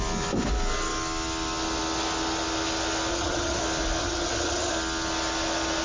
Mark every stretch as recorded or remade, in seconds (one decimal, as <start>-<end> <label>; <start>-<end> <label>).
0.0-3.1 recorded; 3.1-3.6 remade; 3.6-4.0 recorded; 4.0-4.7 remade; 4.7-5.8 recorded